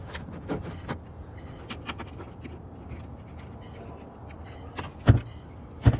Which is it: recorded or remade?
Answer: recorded